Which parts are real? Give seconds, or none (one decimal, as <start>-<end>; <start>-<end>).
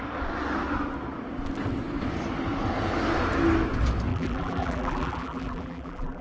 0.0-4.1